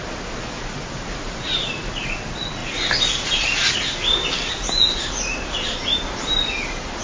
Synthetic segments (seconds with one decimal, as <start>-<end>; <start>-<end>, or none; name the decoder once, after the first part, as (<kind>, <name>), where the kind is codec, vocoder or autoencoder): none